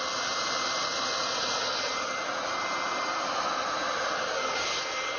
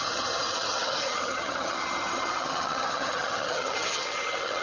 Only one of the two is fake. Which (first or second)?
second